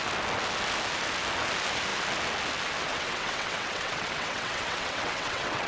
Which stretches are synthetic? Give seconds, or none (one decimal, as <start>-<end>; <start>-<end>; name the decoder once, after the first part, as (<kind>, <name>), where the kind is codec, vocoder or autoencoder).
2.9-5.7 (vocoder, WaveNeXt)